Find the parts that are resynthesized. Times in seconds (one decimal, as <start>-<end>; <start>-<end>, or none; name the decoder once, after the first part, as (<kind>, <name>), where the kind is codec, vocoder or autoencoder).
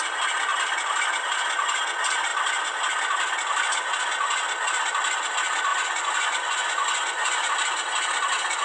5.7-7.5 (vocoder, Vocos)